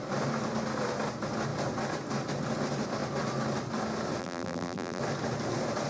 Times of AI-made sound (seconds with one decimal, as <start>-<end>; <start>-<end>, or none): 4.2-5.0

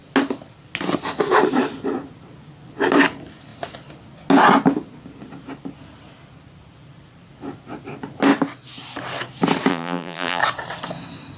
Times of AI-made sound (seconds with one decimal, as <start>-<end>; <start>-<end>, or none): 9.7-10.4